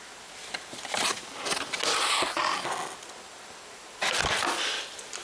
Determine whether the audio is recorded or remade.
recorded